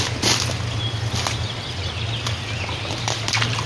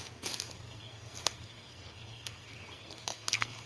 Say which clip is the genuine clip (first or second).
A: first